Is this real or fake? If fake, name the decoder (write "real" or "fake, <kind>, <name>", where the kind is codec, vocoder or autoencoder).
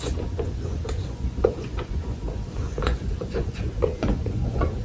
fake, vocoder, Vocos